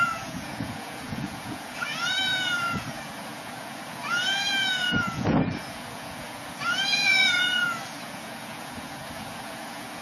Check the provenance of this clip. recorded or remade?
remade